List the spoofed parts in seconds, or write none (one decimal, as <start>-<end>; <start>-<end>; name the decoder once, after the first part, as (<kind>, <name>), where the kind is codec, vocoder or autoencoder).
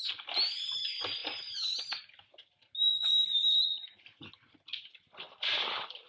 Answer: 3.6-4.2 (vocoder, BigVGAN v2)